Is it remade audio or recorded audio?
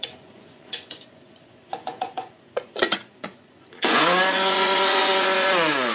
remade